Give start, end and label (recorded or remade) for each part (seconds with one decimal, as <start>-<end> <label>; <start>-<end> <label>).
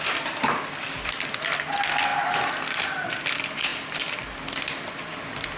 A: 0.0-5.6 recorded